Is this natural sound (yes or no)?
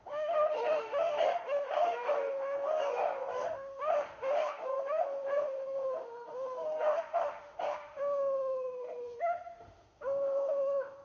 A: no